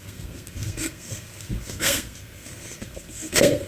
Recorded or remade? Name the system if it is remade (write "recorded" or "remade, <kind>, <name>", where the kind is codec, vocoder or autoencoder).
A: remade, codec, SNAC